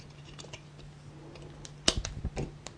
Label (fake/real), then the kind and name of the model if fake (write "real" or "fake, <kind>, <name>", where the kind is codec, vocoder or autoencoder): real